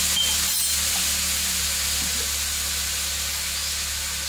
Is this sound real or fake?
real